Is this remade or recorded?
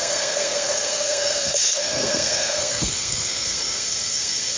remade